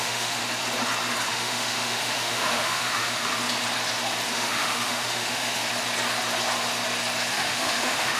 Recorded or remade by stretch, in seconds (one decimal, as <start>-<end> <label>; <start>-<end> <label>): 0.0-0.4 remade; 0.4-1.3 recorded; 1.3-3.3 remade; 3.3-4.3 recorded; 4.3-5.6 remade; 5.6-7.3 recorded; 7.3-8.2 remade